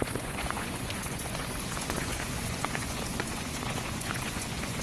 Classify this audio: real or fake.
fake